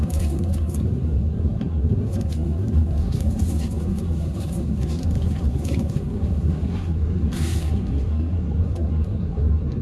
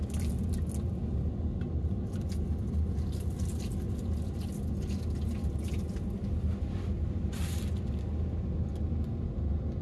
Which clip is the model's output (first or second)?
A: first